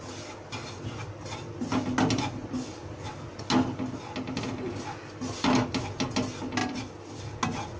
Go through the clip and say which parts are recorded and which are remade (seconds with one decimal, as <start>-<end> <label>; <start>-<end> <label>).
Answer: 0.0-7.8 recorded